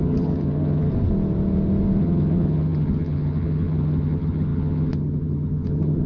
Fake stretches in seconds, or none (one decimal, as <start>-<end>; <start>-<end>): 0.0-0.9; 2.0-6.1